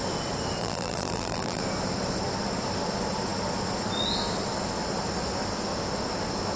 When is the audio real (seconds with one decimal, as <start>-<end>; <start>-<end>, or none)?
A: 0.0-0.6; 1.6-6.6